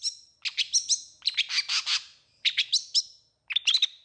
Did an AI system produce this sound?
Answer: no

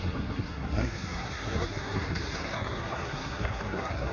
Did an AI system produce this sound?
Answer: yes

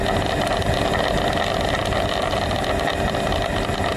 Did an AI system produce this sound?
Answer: no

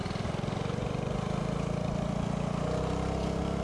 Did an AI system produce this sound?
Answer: no